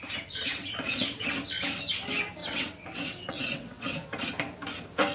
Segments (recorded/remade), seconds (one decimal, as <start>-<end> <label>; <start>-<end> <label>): 0.0-0.5 recorded; 0.5-1.3 remade; 1.3-2.4 recorded; 2.4-4.1 remade; 4.1-5.1 recorded